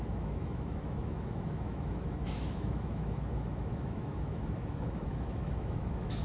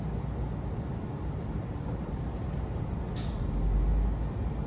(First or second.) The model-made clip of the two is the first